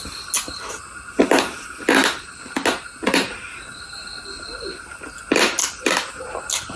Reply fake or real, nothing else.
real